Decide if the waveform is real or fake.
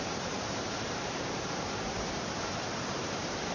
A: fake